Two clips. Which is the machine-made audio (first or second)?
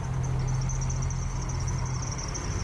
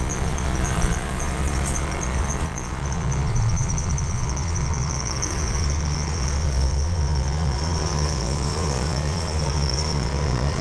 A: second